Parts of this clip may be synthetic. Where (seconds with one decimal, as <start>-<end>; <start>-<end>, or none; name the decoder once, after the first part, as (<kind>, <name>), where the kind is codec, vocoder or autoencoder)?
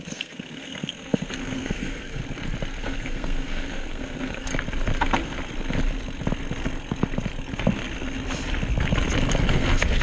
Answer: 0.0-2.2 (codec, SNAC); 2.8-4.5; 9.5-10.0